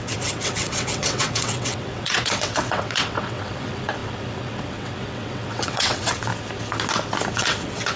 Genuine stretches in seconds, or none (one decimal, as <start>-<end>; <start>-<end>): 6.3-7.3